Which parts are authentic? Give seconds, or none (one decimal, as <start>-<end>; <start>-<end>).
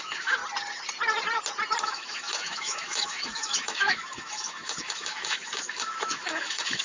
0.4-1.8